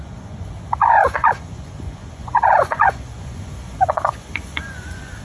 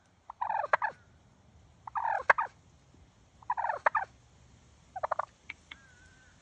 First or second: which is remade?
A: first